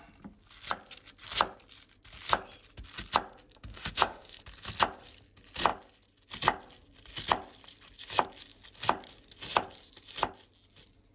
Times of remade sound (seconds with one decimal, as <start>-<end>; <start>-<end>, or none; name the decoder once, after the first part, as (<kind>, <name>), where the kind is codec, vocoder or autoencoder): 3.7-4.4 (autoencoder, DAC-VAE)